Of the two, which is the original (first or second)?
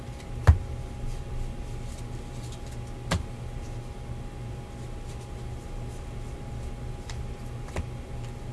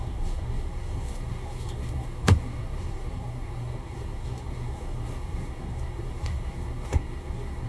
first